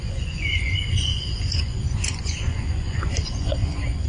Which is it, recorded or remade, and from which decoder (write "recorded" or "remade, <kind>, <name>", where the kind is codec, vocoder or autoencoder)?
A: remade, vocoder, Vocos